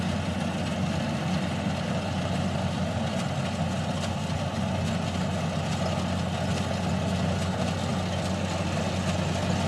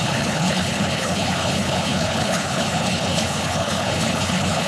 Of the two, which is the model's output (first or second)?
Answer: second